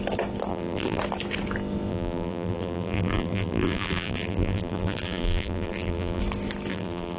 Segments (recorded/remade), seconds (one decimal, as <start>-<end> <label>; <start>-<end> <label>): 0.0-0.5 recorded; 0.5-1.0 remade; 1.0-1.9 recorded; 1.9-6.2 remade; 6.2-6.7 recorded; 6.7-7.2 remade